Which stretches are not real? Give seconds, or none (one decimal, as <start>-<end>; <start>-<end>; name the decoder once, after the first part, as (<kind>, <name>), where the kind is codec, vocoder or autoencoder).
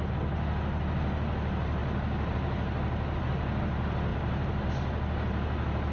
4.1-4.7 (vocoder, BigVGAN v2)